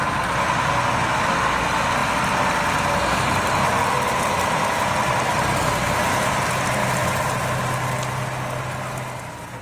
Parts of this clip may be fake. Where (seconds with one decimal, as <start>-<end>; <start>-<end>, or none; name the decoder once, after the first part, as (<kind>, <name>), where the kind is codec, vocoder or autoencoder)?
none